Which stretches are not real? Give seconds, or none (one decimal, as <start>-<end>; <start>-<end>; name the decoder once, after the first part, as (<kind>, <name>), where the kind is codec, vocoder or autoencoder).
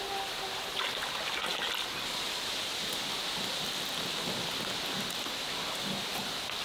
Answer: none